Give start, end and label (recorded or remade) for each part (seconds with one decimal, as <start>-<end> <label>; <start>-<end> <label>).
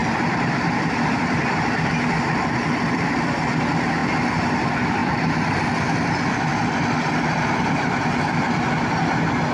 0.0-3.2 remade; 3.2-4.0 recorded; 4.0-4.5 remade; 4.5-5.0 recorded; 5.0-8.2 remade; 8.2-9.5 recorded